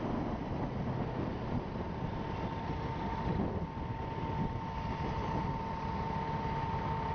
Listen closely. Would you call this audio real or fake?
real